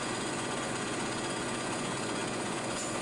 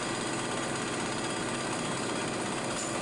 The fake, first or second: first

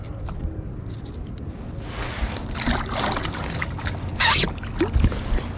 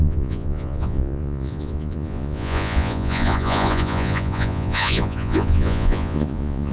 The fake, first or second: second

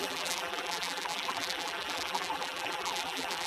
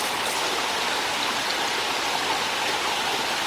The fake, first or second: first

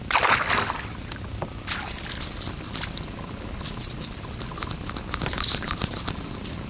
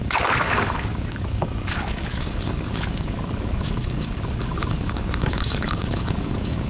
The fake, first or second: second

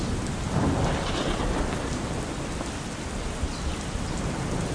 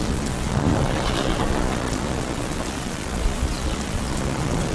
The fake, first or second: second